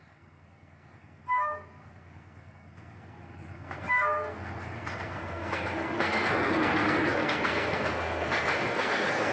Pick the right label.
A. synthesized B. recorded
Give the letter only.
A